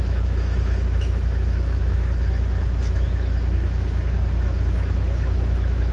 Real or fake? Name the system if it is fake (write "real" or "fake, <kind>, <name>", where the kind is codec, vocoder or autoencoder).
fake, autoencoder, DAC-VAE